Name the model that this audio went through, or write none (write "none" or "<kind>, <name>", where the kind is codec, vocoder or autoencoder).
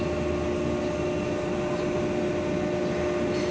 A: none